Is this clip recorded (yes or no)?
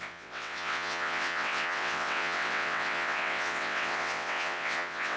no